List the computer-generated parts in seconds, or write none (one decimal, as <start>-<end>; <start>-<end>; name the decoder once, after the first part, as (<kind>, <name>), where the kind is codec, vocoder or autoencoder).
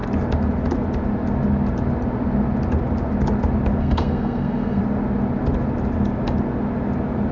3.8-4.8 (codec, SNAC)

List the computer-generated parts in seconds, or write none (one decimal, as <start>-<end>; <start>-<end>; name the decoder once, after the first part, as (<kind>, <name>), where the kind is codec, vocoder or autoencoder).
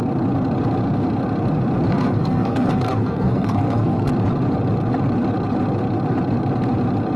1.9-4.1 (codec, SNAC)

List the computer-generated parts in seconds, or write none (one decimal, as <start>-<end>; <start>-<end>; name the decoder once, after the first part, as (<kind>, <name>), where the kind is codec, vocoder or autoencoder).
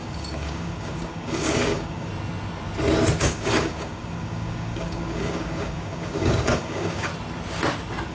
0.0-2.1 (codec, DAC); 3.2-7.1